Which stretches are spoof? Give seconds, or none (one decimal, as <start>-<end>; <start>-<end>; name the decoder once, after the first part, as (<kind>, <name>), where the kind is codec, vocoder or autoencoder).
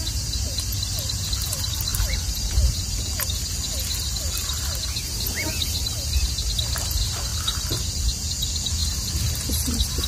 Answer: 1.9-2.8 (vocoder, BigVGAN v2)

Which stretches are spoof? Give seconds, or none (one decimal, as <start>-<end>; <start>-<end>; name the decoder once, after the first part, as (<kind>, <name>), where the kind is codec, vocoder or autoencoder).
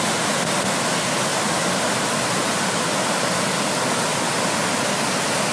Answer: 1.3-4.5 (vocoder, BigVGAN v2)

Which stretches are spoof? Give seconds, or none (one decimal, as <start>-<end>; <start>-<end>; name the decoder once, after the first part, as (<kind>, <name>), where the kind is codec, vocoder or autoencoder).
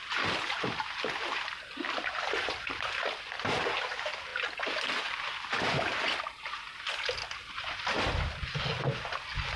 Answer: none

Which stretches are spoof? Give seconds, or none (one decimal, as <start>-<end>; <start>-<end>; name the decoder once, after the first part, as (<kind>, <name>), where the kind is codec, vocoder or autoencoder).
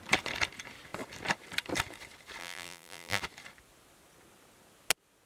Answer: 2.4-3.2 (vocoder, BigVGAN v2)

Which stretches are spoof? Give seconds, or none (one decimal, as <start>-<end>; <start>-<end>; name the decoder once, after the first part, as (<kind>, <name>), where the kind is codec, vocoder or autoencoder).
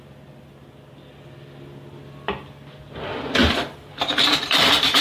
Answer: 3.4-5.0 (vocoder, BigVGAN v2)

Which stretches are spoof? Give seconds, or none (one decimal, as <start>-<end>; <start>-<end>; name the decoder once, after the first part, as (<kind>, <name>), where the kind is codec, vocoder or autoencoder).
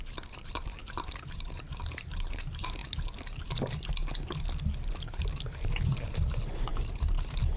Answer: 0.0-2.8 (vocoder, BigVGAN v2); 5.2-7.6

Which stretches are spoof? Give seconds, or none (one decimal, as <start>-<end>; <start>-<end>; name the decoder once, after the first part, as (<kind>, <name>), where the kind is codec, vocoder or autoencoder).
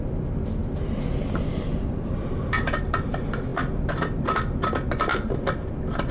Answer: 0.6-2.8 (vocoder, BigVGAN v2)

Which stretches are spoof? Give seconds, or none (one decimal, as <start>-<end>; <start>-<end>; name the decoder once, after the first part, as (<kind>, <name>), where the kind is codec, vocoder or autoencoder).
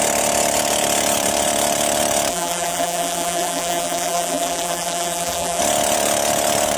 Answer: 2.3-5.6 (vocoder, BigVGAN v2)